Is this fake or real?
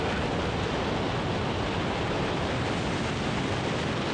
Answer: real